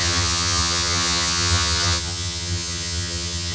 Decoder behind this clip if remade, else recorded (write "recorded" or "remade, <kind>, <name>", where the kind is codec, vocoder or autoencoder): remade, vocoder, HiFi-GAN